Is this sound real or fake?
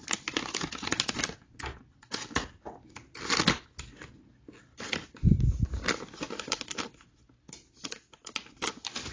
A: real